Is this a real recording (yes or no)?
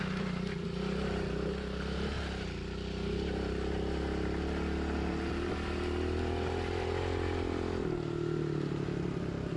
yes